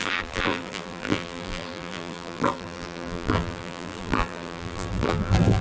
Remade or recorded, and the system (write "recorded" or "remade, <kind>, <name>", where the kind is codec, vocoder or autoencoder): remade, vocoder, BigVGAN v2